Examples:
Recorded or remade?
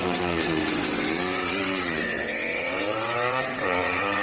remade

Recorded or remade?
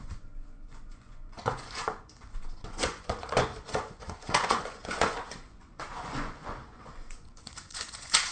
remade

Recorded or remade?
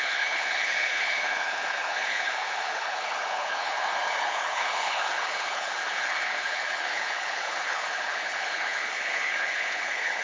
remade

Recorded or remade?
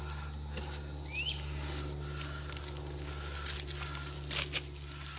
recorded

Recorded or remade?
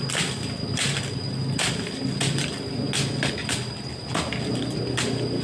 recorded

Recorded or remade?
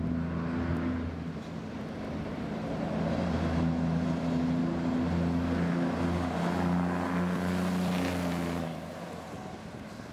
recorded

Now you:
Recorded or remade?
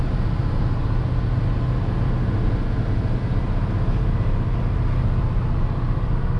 recorded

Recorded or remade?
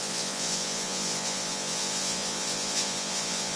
remade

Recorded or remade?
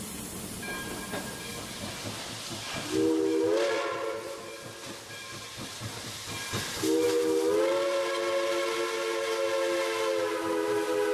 recorded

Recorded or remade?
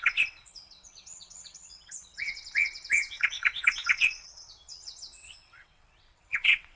remade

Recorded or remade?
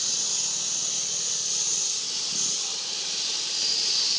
recorded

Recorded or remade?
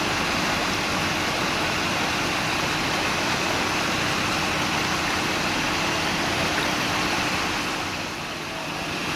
recorded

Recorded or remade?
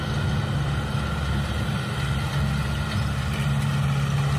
recorded